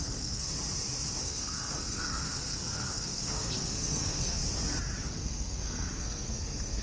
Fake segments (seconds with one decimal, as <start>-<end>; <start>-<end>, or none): 0.0-0.5; 1.2-4.4; 5.1-6.8